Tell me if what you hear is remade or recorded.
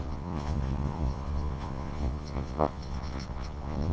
remade